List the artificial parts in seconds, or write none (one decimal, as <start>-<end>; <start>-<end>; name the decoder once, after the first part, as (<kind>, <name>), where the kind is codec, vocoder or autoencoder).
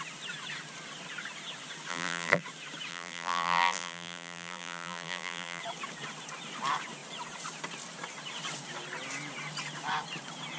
1.9-2.4 (vocoder, BigVGAN v2); 2.9-5.6